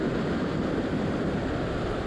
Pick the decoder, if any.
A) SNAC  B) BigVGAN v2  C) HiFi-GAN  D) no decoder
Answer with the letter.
D